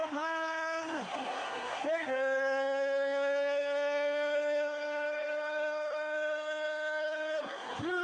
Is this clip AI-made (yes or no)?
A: yes